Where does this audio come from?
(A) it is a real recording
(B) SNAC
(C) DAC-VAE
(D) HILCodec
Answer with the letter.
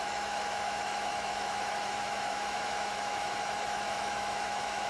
C